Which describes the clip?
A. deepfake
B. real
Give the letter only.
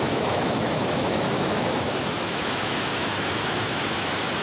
A